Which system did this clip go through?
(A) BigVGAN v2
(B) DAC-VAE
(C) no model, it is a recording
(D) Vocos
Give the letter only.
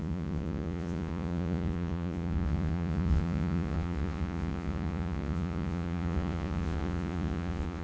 D